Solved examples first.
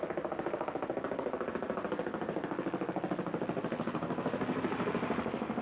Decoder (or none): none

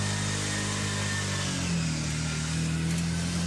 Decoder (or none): none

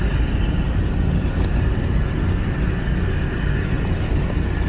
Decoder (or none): none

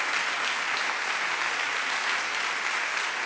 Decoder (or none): none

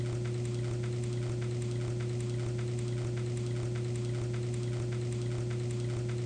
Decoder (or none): none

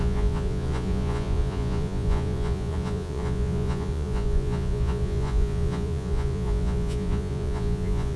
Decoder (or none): vocoder, Vocos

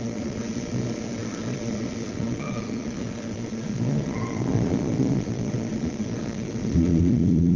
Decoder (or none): vocoder, Vocos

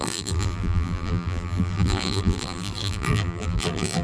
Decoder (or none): vocoder, BigVGAN v2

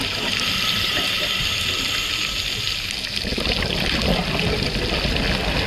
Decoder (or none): none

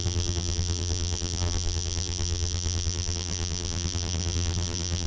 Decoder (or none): vocoder, BigVGAN v2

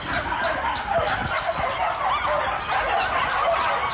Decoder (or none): none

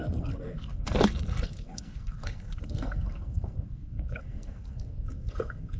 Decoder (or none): codec, SNAC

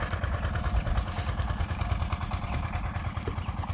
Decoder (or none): none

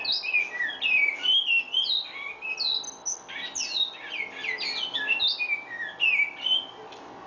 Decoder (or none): none